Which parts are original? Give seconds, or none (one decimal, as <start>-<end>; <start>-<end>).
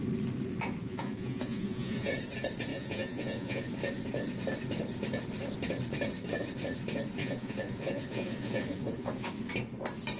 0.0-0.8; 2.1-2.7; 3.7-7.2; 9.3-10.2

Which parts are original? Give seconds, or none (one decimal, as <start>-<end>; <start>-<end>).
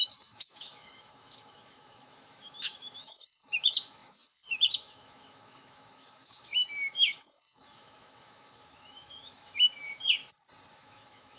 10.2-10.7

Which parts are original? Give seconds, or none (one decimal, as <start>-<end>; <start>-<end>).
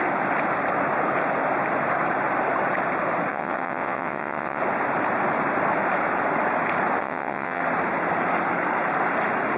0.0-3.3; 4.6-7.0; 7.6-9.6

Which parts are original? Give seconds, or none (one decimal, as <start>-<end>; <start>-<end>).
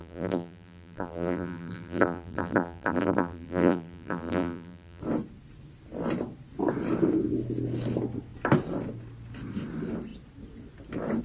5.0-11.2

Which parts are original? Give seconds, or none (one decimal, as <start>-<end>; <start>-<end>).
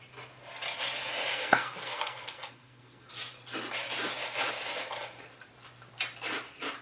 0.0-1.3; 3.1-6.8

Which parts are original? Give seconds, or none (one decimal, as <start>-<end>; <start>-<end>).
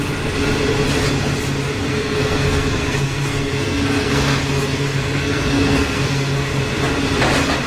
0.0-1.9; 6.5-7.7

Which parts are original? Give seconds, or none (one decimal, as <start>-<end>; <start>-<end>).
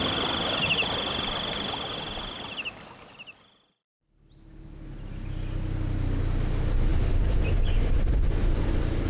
0.0-6.9; 7.4-9.1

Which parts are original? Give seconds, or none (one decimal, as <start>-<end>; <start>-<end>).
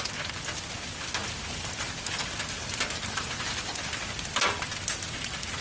0.0-5.6